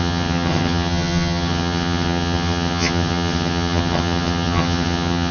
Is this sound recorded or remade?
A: remade